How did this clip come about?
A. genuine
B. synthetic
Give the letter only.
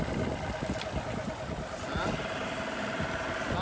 A